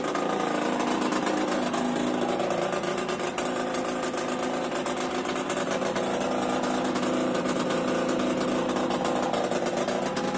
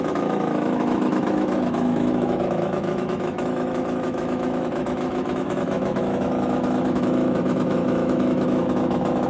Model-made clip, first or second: second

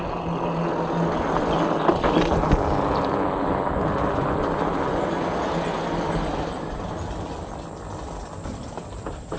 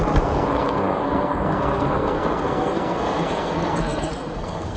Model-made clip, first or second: second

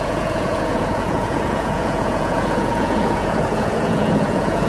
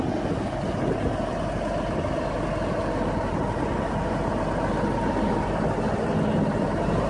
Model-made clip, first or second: first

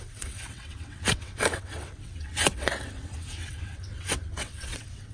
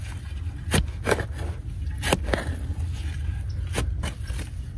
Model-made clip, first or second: first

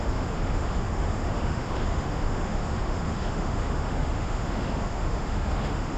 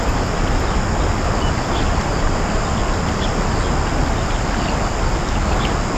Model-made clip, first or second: first